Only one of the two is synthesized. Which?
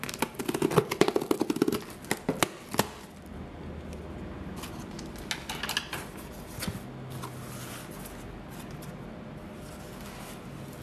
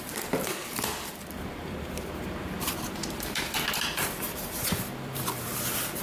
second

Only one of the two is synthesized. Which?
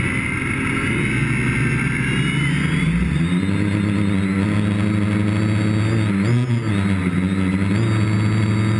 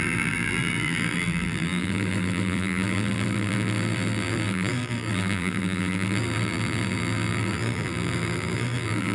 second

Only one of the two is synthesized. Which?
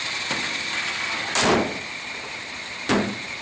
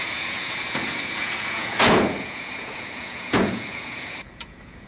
second